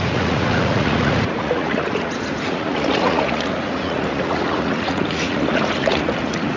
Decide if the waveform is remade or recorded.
remade